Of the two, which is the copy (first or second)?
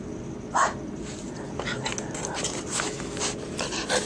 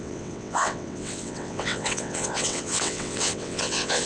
second